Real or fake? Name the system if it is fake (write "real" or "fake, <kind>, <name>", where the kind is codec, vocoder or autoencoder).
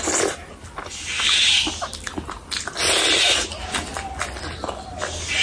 real